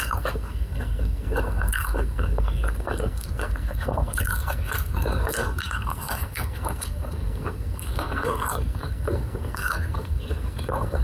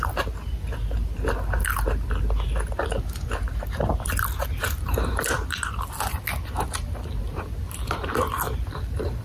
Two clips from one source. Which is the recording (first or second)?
second